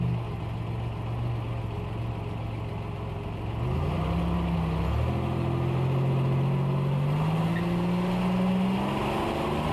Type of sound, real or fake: real